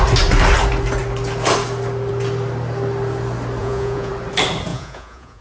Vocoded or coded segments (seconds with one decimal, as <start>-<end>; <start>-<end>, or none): 3.6-4.1; 4.7-5.4